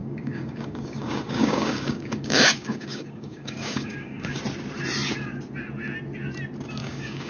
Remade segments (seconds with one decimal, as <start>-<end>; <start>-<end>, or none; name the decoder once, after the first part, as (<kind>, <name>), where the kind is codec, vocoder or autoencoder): 0.0-4.4 (codec, DAC); 6.8-7.3

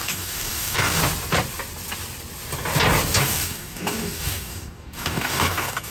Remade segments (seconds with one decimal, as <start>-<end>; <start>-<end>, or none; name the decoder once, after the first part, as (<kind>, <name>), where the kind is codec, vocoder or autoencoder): 0.0-1.0 (codec, DAC); 3.2-5.9

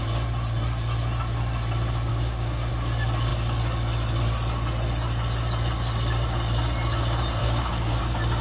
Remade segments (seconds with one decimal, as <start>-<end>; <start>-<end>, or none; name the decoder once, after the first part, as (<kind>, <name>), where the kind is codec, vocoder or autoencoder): 2.1-2.7 (codec, DAC); 7.4-8.0

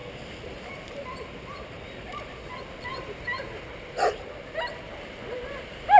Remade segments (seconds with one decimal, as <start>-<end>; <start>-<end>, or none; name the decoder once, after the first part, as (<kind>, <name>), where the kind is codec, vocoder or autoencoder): none